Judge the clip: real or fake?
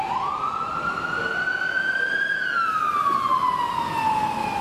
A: real